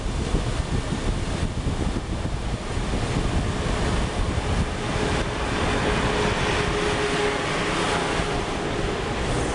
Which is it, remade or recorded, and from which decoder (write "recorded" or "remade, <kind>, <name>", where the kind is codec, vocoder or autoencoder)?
recorded